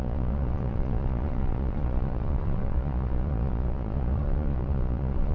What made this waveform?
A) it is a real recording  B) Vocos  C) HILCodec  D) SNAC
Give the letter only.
B